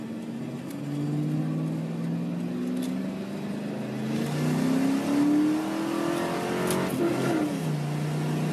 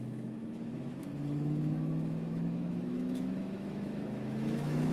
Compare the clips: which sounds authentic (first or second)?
first